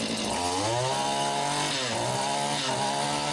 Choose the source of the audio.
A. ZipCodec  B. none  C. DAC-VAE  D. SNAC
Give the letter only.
B